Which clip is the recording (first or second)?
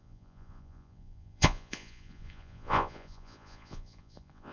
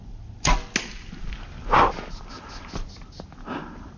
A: second